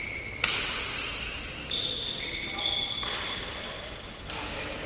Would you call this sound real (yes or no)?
yes